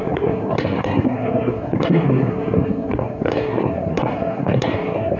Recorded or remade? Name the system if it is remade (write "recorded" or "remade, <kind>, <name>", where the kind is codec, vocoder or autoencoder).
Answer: remade, codec, SNAC